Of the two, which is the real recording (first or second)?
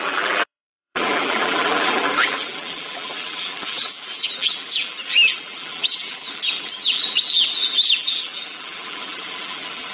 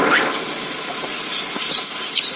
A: second